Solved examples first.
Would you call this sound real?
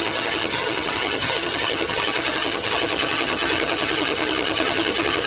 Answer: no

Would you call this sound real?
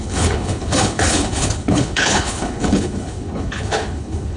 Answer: no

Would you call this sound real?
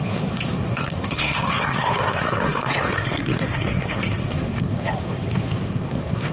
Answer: no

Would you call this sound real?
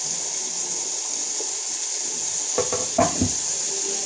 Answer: yes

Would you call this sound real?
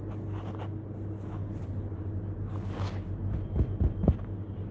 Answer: yes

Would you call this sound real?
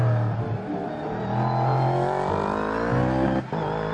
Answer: yes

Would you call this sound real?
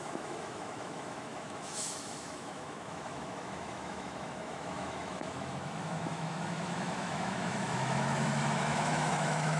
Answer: no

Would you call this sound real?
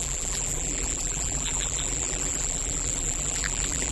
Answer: no